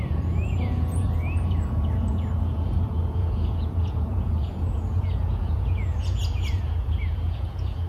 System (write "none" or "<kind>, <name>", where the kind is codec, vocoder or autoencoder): vocoder, Vocos